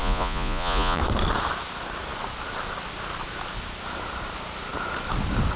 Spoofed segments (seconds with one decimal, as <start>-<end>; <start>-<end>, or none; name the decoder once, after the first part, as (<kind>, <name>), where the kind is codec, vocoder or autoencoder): 0.0-1.0 (vocoder, Vocos)